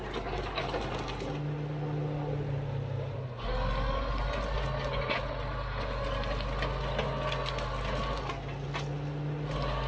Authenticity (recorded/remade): recorded